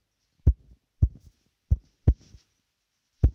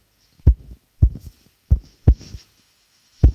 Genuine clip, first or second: first